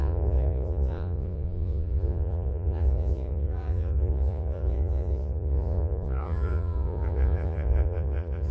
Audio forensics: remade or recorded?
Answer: remade